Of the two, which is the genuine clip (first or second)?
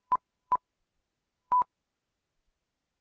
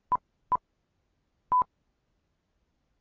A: second